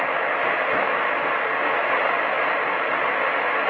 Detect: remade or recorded recorded